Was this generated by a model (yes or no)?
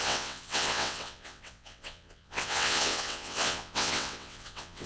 yes